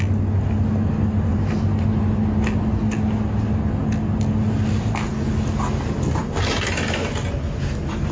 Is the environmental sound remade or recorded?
recorded